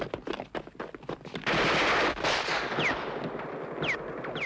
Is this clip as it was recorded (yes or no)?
yes